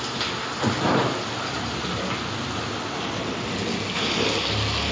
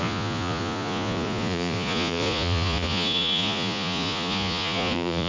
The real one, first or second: first